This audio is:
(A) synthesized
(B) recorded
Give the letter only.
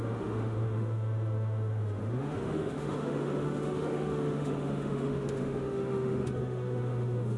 A